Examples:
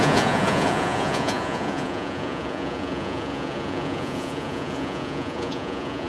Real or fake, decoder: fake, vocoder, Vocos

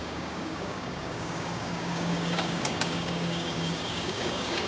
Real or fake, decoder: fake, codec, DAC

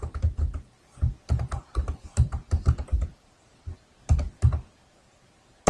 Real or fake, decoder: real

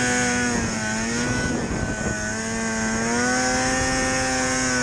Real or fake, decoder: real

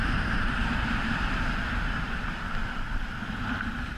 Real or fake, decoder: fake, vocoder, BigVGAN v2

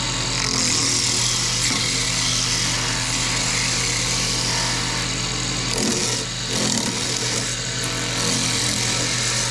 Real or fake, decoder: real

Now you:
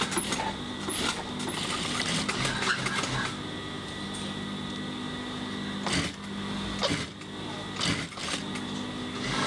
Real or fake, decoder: real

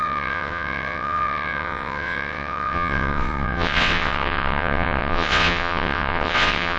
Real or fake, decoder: fake, vocoder, WaveNeXt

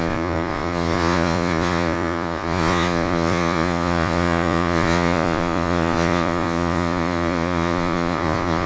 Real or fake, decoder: fake, vocoder, Vocos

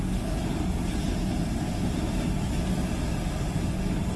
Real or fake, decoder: real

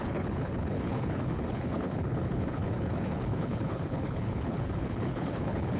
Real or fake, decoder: fake, codec, HILCodec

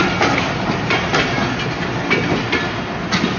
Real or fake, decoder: real